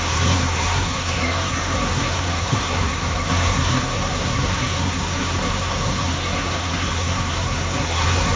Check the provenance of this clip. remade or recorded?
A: remade